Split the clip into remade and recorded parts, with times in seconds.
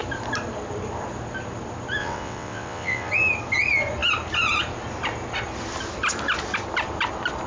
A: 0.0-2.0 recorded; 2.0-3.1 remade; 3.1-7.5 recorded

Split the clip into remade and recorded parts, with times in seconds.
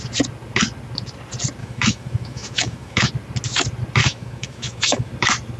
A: 0.0-1.6 recorded; 1.6-3.1 remade; 3.1-4.0 recorded; 4.0-5.1 remade; 5.1-5.6 recorded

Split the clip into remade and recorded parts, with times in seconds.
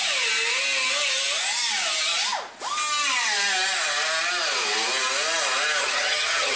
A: 0.0-5.8 recorded; 5.8-6.6 remade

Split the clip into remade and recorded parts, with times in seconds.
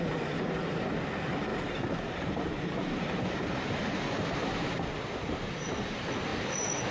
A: 0.0-1.5 recorded; 1.5-4.3 remade; 4.3-6.9 recorded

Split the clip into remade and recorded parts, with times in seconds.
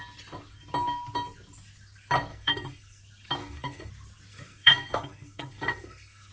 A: 0.0-2.3 recorded; 2.3-3.0 remade; 3.0-3.4 recorded; 3.4-3.9 remade; 3.9-4.3 recorded; 4.3-6.3 remade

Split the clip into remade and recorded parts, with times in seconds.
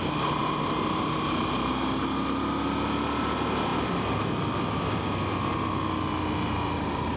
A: 0.0-7.2 recorded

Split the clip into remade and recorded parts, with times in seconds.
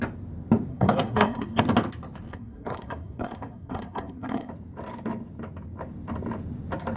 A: 0.0-0.7 recorded; 0.7-1.6 remade; 1.6-2.3 recorded; 2.3-4.5 remade; 4.5-7.0 recorded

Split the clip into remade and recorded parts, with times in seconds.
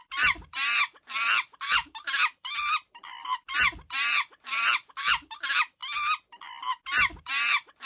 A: 0.0-5.8 remade; 5.8-7.2 recorded; 7.2-7.9 remade